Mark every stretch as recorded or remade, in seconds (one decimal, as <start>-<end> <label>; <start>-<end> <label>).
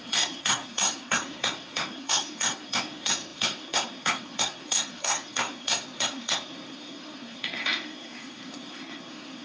0.0-9.4 remade